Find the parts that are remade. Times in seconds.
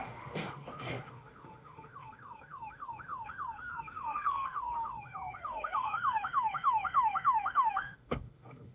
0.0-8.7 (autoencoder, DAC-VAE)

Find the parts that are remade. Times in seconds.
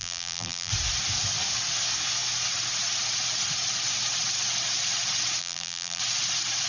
0.0-0.7 (vocoder, BigVGAN v2); 5.4-6.0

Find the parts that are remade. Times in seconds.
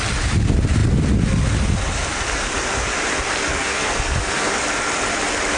3.5-4.5 (codec, SNAC)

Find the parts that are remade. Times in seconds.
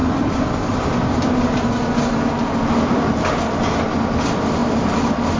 0.0-1.7 (vocoder, BigVGAN v2); 4.6-5.4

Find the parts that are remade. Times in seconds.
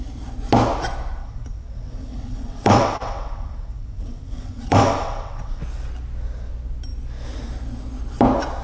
1.2-5.6 (vocoder, WaveNeXt)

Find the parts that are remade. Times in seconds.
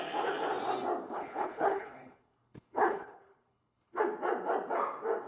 1.0-4.0 (codec, HILCodec)